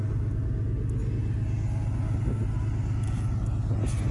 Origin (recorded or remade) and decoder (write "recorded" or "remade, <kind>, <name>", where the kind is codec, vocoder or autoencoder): recorded